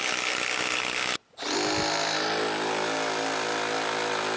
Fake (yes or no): no